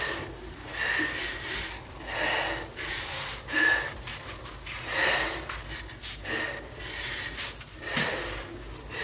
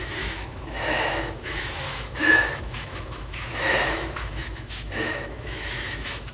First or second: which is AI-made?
second